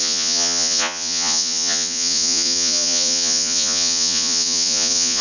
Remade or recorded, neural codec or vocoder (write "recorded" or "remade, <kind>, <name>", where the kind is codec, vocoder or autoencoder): remade, vocoder, Vocos